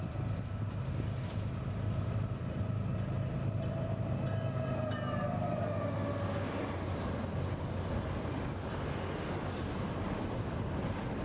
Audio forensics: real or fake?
real